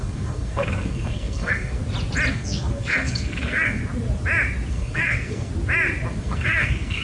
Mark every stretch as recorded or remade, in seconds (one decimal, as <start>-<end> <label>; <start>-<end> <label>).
0.0-1.8 remade; 1.8-2.3 recorded; 2.3-3.8 remade; 3.8-4.7 recorded; 4.7-5.5 remade; 5.5-6.2 recorded; 6.2-7.0 remade